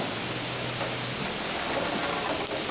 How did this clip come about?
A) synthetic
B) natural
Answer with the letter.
B